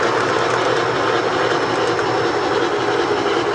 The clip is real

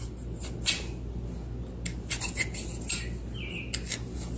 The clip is real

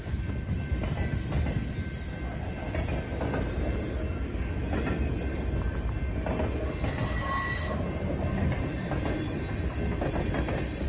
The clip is real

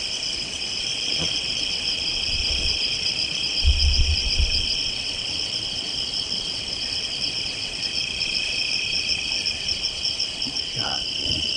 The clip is fake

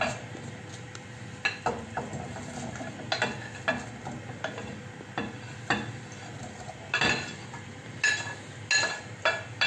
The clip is real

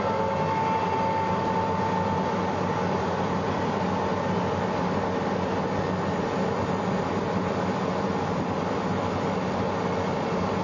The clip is real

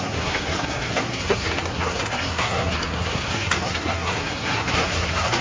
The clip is fake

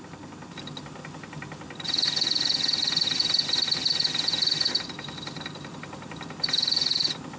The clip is real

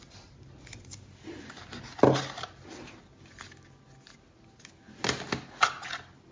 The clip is real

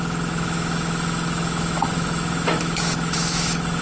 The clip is fake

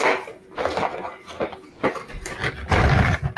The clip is real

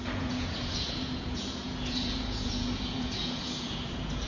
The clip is fake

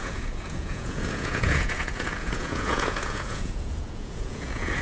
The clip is fake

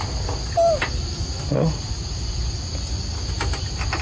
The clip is real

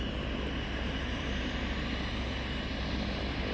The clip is real